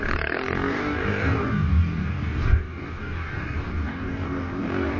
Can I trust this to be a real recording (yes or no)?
no